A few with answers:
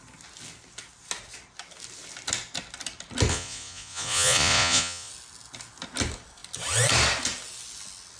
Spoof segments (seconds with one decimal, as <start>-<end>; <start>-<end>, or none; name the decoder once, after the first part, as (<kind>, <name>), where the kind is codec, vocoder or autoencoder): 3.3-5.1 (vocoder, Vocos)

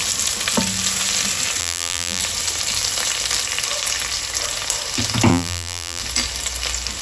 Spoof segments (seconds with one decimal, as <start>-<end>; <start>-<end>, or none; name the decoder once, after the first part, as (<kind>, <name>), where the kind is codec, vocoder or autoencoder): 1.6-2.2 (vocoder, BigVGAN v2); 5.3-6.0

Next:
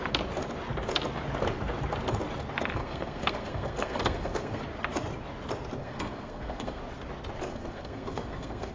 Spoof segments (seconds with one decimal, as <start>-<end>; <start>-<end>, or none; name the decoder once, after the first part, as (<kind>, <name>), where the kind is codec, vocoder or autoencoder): 2.8-4.6 (codec, SNAC); 5.8-6.8; 7.5-8.7

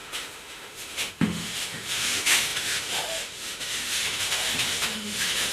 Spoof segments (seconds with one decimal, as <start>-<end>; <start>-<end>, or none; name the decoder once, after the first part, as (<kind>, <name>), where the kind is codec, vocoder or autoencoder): 0.0-5.5 (autoencoder, DAC-VAE)